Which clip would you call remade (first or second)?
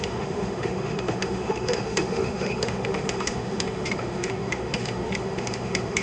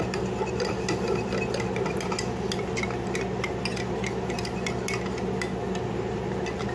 first